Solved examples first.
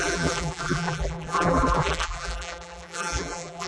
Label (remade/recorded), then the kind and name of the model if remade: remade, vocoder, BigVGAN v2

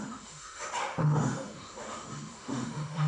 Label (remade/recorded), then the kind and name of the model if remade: remade, autoencoder, DAC-VAE